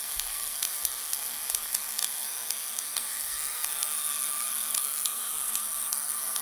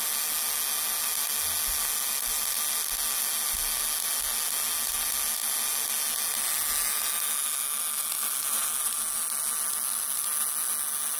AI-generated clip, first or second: first